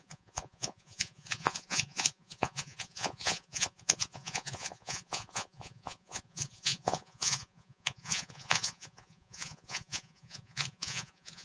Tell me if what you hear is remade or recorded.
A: remade